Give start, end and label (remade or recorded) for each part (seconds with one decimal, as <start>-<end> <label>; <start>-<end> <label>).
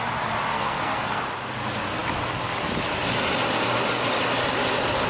0.0-0.5 recorded; 0.5-1.2 remade; 1.2-5.1 recorded